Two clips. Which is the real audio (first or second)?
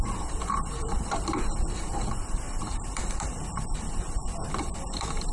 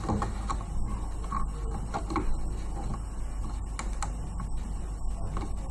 second